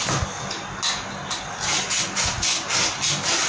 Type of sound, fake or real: real